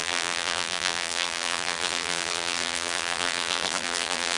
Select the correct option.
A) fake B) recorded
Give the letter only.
A